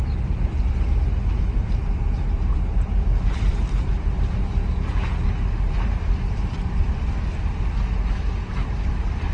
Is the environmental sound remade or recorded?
recorded